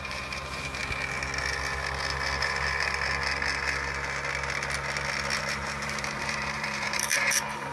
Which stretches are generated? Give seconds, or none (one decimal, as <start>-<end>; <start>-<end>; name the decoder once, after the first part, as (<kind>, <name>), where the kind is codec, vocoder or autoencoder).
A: 0.0-0.8 (vocoder, BigVGAN v2); 5.4-7.7